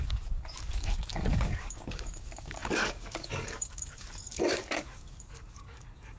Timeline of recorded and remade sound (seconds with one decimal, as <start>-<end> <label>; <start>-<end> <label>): 0.0-6.2 remade